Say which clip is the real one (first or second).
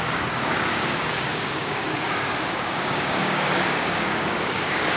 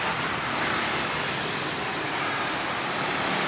second